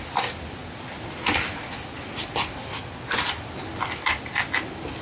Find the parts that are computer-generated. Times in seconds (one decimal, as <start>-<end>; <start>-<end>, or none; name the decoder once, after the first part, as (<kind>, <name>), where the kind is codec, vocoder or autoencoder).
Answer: none